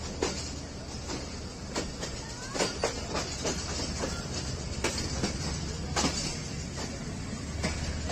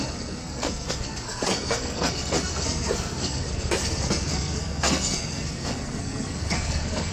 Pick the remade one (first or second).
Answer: second